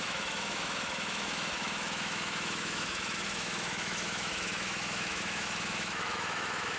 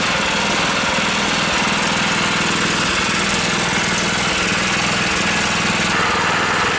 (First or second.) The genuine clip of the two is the second